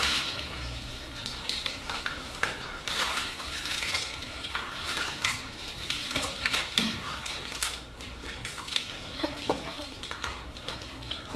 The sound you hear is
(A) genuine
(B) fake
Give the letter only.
B